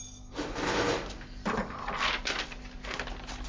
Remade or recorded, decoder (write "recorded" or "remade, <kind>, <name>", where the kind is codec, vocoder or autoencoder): recorded